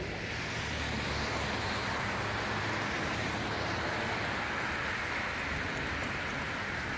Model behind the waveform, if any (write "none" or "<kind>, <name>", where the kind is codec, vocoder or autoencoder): none